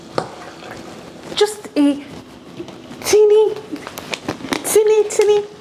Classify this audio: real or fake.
real